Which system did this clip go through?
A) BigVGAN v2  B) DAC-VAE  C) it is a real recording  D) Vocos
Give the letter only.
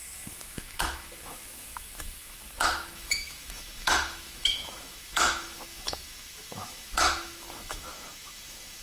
B